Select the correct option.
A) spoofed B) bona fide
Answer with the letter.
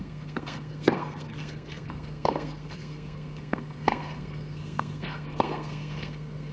A